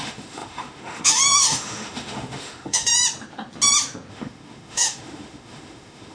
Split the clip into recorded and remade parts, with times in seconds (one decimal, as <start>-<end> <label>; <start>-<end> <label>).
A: 0.0-2.9 remade; 2.9-4.1 recorded; 4.1-6.1 remade